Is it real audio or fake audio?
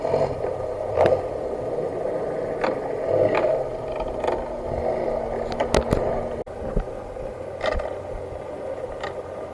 real